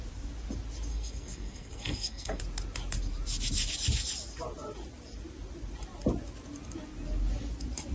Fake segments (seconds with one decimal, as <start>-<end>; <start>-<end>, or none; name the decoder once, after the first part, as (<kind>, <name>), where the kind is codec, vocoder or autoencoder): 0.9-2.4 (codec, SNAC)